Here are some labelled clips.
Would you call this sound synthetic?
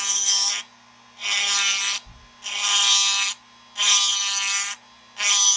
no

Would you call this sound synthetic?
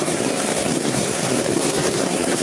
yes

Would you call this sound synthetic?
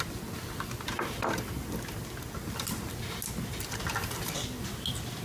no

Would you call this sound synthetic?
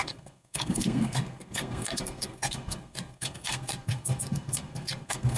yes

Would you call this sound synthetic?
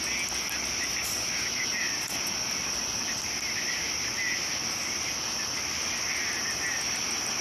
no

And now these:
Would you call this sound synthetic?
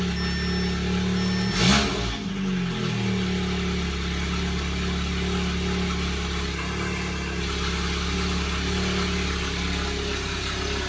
no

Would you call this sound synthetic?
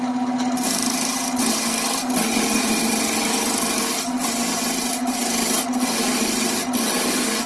no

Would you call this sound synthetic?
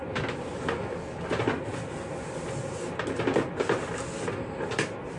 no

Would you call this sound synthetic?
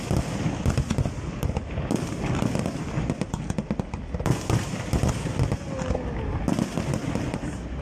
no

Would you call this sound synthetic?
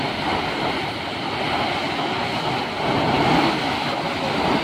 no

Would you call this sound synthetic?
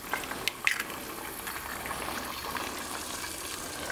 no